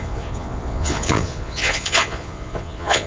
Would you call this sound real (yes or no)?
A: no